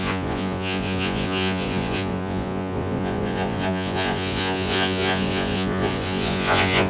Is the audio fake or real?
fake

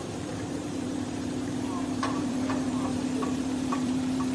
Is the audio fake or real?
fake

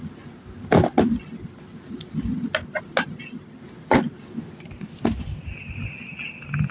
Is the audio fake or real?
real